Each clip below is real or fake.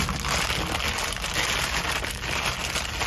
real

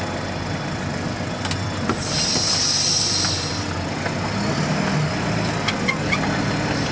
real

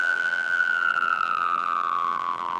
fake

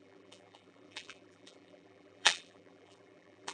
fake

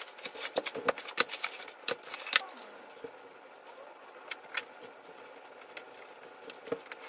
real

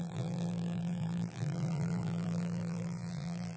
fake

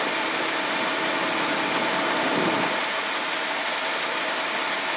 real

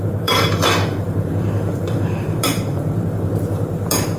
fake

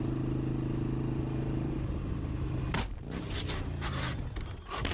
real